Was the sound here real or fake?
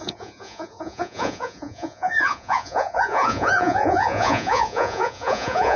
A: fake